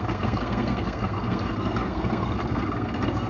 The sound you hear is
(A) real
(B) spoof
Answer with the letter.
B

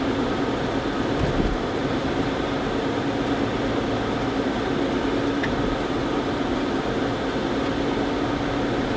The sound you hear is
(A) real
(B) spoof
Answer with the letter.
A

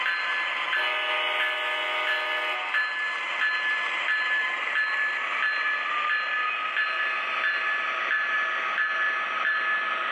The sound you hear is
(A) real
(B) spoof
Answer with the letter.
A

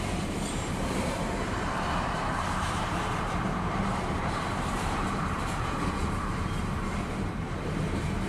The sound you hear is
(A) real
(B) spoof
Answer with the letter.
B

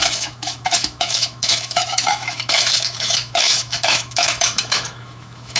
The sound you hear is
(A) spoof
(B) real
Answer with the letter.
A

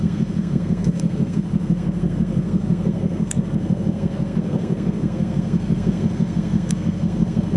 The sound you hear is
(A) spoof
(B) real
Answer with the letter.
A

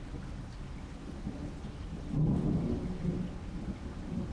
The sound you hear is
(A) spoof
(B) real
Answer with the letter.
B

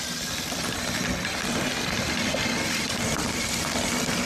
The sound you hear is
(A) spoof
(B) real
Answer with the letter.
B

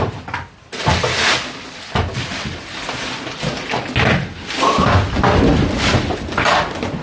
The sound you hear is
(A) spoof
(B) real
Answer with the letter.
B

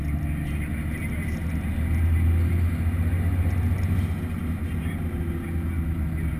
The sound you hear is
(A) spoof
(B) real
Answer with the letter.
B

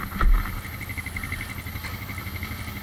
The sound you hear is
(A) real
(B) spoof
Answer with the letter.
A